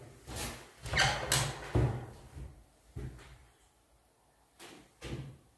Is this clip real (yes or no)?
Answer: yes